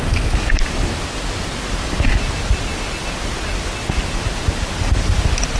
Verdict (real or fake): real